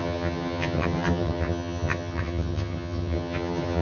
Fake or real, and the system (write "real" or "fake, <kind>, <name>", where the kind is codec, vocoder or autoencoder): fake, vocoder, HiFi-GAN